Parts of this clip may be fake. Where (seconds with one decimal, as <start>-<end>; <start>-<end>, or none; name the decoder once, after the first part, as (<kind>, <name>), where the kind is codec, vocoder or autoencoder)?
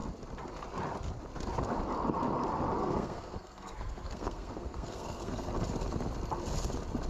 2.8-5.5 (codec, SNAC)